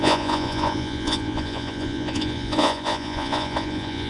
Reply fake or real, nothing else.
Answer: fake